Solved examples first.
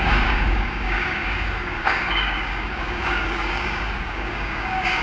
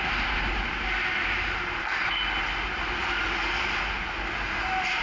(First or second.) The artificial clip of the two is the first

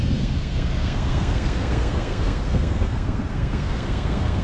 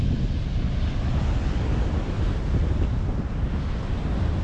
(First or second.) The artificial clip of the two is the first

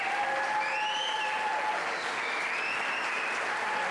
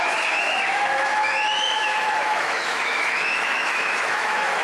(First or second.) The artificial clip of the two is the second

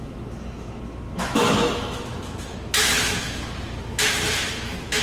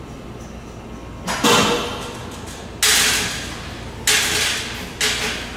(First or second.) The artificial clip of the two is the first